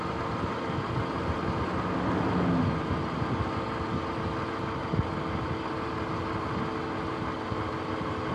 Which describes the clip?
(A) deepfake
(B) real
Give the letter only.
B